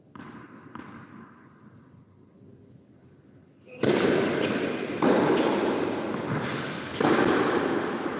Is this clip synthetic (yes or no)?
no